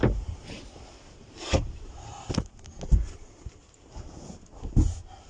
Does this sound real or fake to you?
real